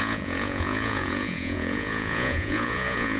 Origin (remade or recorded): remade